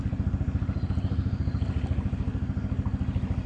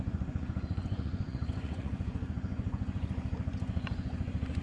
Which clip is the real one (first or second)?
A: first